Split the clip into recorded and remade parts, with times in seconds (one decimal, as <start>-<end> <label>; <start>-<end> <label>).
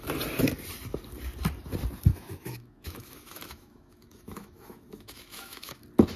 0.0-2.1 recorded; 2.1-5.8 remade; 5.8-6.2 recorded